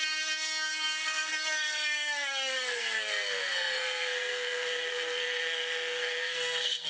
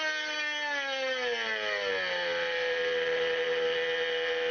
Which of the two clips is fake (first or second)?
first